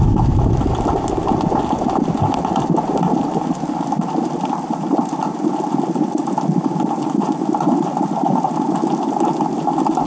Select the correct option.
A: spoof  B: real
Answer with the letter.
B